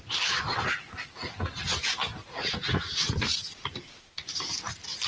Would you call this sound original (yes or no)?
yes